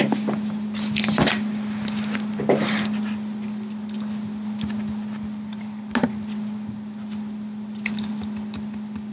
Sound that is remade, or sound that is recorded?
recorded